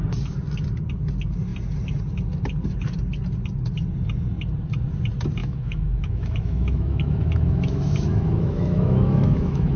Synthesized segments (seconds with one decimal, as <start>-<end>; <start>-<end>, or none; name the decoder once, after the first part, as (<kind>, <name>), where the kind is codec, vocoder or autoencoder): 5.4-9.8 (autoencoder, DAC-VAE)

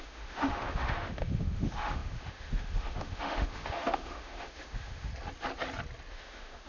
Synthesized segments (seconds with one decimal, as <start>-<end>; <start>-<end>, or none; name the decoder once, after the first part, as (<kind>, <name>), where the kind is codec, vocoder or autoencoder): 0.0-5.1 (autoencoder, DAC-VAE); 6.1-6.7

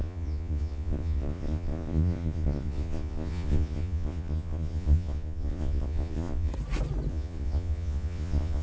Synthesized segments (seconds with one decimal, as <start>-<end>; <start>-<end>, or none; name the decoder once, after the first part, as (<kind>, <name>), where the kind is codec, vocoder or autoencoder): 0.0-6.5 (vocoder, Vocos); 7.1-8.6

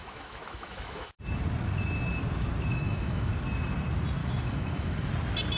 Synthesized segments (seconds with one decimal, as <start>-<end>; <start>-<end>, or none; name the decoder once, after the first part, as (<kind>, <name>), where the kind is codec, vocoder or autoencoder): 0.0-1.2 (autoencoder, DAC-VAE); 2.7-3.3; 4.2-5.1